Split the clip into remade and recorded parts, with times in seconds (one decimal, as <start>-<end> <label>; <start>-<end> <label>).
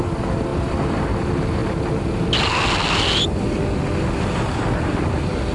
0.0-5.5 recorded